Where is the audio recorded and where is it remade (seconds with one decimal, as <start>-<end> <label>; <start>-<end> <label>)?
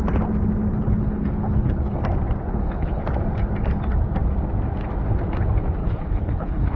0.0-0.7 recorded; 0.7-2.0 remade; 2.0-2.5 recorded; 2.5-3.0 remade; 3.0-5.8 recorded; 5.8-6.8 remade